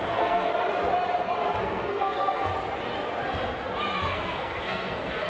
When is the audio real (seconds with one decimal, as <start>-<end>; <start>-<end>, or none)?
0.5-1.6; 2.5-4.0